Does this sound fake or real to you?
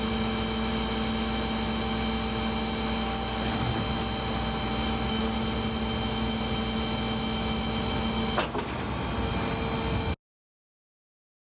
real